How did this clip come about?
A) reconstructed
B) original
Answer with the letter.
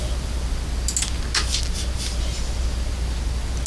B